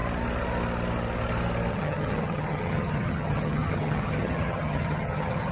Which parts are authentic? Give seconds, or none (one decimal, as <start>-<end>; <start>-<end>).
0.0-1.7